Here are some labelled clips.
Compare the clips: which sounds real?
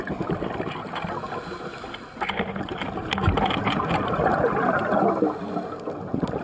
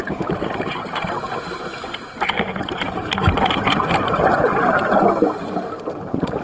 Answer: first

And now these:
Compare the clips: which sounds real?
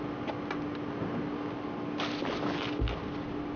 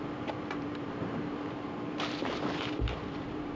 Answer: first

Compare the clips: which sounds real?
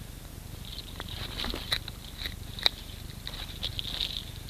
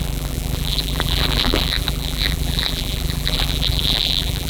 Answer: first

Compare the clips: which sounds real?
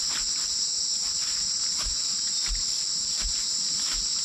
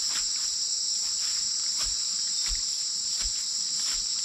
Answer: first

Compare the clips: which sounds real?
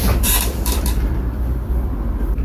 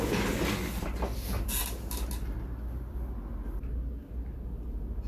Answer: second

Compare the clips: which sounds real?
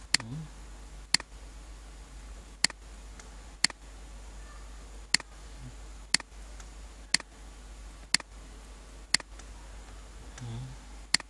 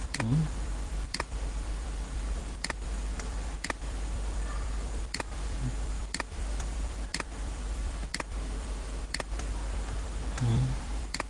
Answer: first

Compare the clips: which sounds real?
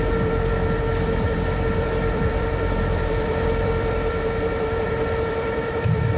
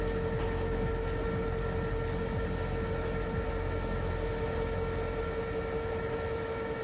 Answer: second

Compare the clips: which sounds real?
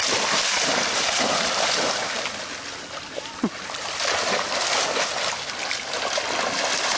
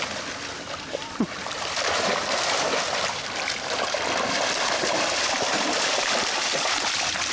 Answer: first